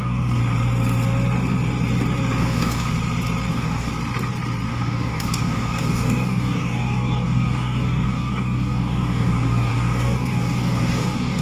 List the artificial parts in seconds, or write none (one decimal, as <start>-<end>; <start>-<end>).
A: 0.0-0.4; 2.4-2.9; 3.5-3.9; 4.7-11.4